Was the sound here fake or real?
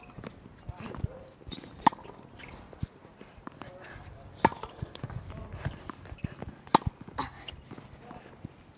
real